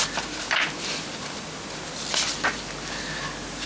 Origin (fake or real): real